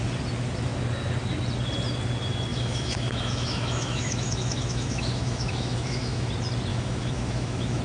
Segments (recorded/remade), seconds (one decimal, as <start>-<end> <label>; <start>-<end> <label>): 0.0-2.5 recorded; 2.5-6.3 remade; 6.3-6.7 recorded; 6.7-7.8 remade